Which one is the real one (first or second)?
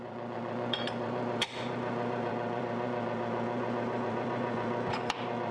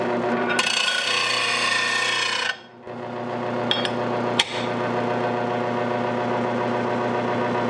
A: second